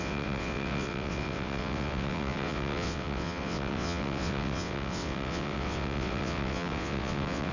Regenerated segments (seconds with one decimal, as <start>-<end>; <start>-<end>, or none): 0.0-7.5